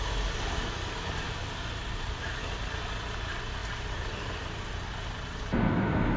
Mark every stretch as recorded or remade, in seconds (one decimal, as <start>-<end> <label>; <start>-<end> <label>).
0.0-1.4 recorded; 1.4-2.4 remade; 2.4-3.6 recorded; 3.6-5.6 remade; 5.6-6.2 recorded

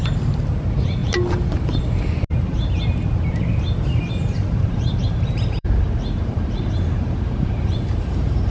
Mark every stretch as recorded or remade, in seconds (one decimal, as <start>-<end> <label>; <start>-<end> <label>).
0.0-4.3 recorded; 4.3-8.5 remade

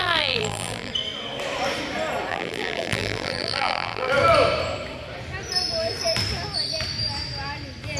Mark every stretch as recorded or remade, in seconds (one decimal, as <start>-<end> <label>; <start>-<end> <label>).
0.0-0.9 remade; 0.9-2.3 recorded; 2.3-4.1 remade; 4.1-8.0 recorded

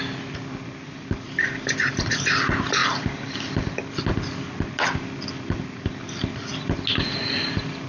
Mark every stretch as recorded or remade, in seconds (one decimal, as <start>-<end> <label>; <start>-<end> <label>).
0.0-2.8 recorded; 2.8-3.4 remade; 3.4-7.9 recorded

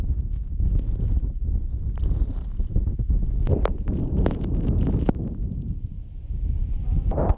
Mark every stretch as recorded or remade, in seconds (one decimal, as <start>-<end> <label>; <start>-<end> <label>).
0.0-7.4 recorded

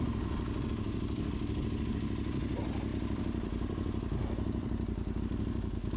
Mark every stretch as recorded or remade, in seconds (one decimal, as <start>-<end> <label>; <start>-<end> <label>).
0.0-2.9 recorded; 2.9-5.2 remade; 5.2-6.0 recorded